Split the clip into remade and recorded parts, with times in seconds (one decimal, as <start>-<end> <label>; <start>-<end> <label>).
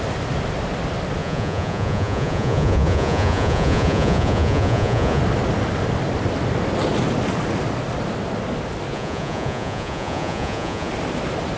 0.0-1.2 recorded; 1.2-5.2 remade; 5.2-8.9 recorded; 8.9-10.9 remade; 10.9-11.6 recorded